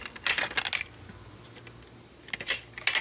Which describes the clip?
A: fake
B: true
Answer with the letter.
B